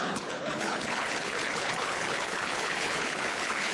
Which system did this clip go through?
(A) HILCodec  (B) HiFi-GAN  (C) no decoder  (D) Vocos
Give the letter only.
A